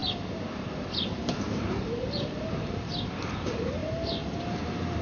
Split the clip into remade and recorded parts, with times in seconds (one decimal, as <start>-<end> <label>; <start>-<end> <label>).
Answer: 0.0-5.0 remade